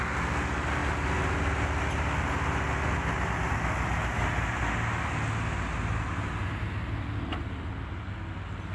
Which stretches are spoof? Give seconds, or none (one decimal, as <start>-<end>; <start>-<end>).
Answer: none